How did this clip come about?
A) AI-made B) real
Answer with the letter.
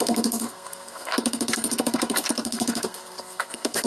A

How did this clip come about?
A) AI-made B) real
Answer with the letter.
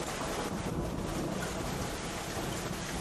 B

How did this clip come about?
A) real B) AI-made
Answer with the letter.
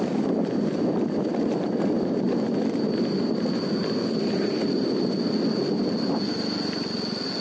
A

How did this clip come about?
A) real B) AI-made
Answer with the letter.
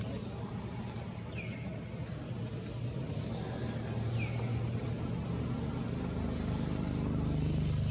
A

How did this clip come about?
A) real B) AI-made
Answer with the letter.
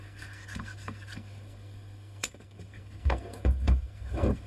B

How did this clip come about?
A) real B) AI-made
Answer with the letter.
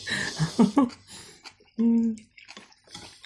A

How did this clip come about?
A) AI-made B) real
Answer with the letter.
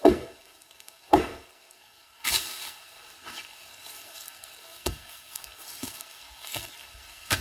A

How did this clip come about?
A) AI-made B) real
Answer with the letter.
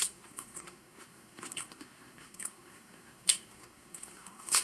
A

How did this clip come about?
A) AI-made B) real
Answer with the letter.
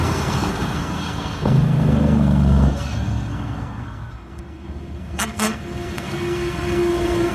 A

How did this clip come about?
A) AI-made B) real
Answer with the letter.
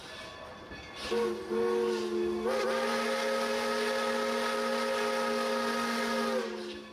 B